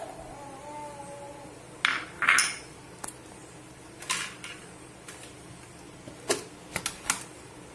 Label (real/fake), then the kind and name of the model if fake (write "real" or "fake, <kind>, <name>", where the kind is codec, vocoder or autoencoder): real